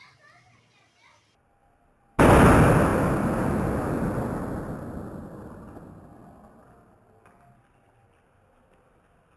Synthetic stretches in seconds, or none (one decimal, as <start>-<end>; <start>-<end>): none